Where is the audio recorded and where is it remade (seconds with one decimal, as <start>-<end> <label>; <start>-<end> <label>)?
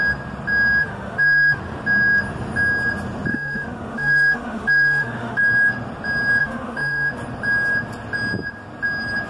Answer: 0.0-0.8 recorded; 0.8-1.6 remade; 1.6-3.3 recorded; 3.3-5.4 remade; 5.4-6.4 recorded; 6.4-7.1 remade; 7.1-9.3 recorded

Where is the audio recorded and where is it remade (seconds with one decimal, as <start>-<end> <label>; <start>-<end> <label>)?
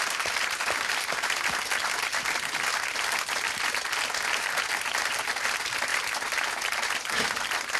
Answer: 0.0-7.8 recorded